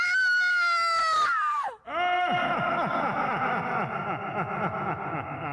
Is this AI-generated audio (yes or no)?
no